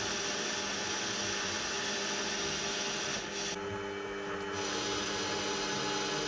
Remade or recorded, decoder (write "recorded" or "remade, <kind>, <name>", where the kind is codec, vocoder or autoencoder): recorded